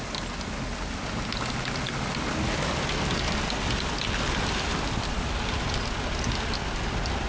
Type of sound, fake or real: real